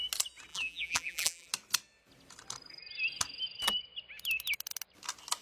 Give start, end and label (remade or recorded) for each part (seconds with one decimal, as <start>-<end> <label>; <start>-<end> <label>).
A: 0.0-0.5 recorded; 0.5-1.5 remade; 1.5-5.4 recorded